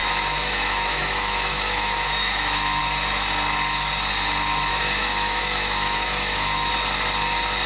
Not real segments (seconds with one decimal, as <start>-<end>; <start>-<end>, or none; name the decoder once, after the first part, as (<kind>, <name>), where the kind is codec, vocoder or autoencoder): 0.0-2.8 (autoencoder, DAC-VAE); 4.7-6.7